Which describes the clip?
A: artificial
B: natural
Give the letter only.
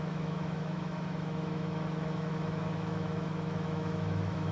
A